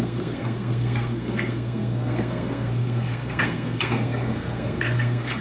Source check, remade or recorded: remade